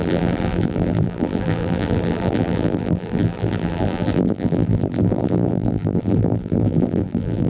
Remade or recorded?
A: remade